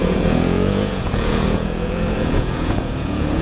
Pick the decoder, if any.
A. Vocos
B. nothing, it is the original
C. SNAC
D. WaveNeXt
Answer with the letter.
A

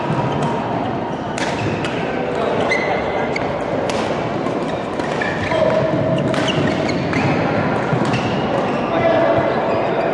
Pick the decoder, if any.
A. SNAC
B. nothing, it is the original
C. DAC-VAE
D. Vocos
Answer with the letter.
B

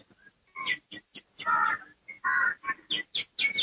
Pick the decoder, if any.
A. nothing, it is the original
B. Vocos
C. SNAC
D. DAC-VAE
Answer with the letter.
A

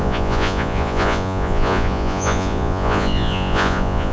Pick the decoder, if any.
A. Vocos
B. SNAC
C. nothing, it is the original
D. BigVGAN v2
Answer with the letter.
A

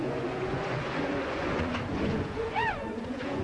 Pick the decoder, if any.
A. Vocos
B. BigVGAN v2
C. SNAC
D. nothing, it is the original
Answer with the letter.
A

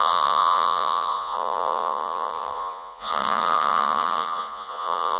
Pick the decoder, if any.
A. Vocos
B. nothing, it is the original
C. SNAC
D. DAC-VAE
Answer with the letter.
A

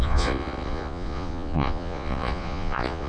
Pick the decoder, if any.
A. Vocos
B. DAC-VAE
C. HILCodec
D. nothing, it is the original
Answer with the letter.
A